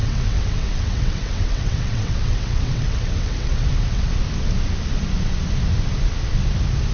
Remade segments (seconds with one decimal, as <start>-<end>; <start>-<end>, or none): 0.0-4.1